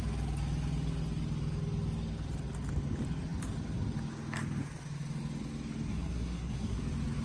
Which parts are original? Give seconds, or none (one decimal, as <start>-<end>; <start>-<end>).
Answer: 0.0-5.9; 6.8-7.2